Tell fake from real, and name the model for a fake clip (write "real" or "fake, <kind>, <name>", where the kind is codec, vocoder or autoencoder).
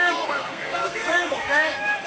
fake, codec, SNAC